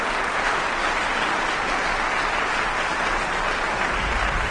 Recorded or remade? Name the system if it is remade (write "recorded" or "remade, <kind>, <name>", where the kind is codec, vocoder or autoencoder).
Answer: recorded